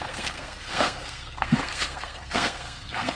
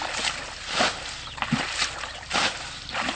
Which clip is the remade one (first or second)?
first